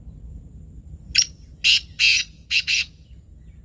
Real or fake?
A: fake